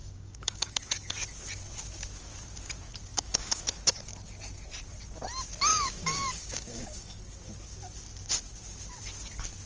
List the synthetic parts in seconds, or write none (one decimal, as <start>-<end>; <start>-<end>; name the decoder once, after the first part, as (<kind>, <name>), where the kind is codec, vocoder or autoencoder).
0.0-1.1 (codec, DAC); 3.1-3.6; 5.7-7.2